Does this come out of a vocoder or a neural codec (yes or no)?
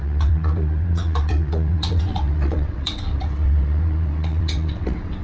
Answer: yes